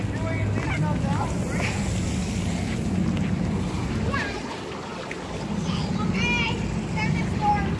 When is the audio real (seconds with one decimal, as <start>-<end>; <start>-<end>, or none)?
0.0-7.8